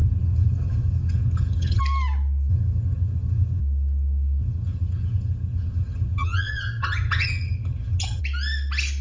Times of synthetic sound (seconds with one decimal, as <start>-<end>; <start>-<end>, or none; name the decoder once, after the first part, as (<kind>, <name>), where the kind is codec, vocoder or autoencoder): 0.0-1.8 (vocoder, HiFi-GAN); 2.5-3.6; 4.4-8.2